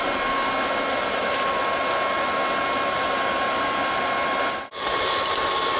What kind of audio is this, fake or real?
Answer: real